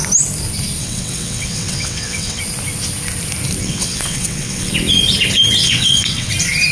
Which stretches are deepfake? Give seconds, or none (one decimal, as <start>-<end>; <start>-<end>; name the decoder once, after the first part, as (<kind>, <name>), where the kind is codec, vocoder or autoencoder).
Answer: 0.8-2.4 (vocoder, WaveNeXt); 3.6-4.7; 5.6-6.3